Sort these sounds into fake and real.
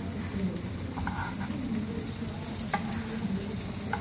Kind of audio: real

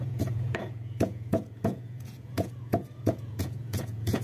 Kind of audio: fake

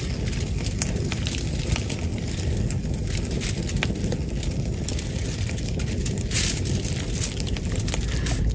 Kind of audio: real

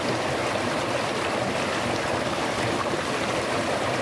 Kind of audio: real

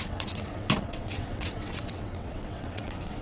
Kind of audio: fake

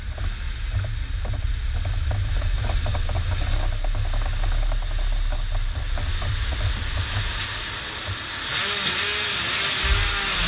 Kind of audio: real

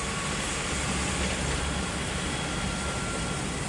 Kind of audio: real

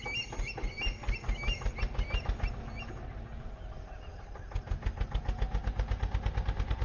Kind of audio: real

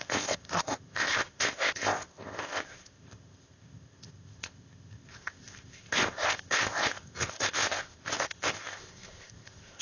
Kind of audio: fake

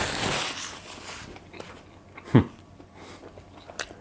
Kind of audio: real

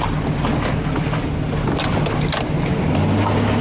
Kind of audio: real